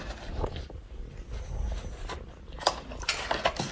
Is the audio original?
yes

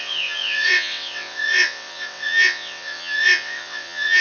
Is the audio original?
no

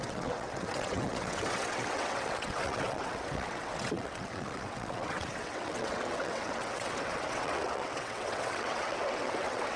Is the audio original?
no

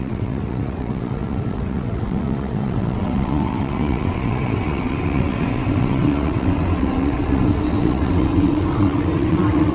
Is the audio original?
no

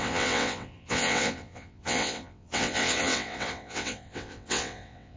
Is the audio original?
no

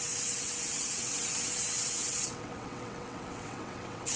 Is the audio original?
no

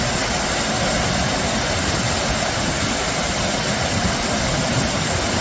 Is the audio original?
yes